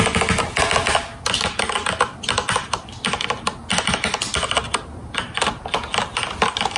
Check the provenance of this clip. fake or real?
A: real